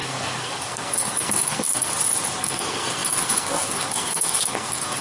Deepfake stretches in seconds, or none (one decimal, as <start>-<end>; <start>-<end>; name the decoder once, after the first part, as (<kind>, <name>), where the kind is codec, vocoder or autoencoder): 0.0-1.9 (codec, SNAC); 2.4-5.0